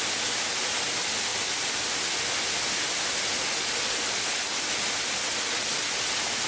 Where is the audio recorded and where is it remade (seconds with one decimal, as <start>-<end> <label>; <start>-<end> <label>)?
0.0-6.5 recorded